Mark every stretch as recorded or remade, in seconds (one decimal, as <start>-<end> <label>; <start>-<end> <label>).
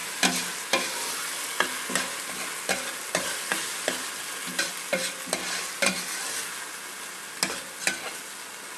0.0-8.8 recorded